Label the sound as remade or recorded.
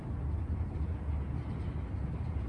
recorded